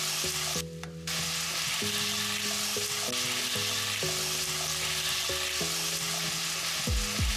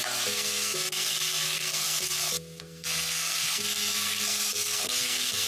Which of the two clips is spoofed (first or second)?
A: second